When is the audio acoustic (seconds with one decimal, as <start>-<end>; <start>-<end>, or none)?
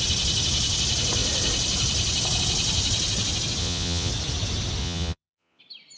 0.0-3.6; 4.1-4.8; 5.6-6.0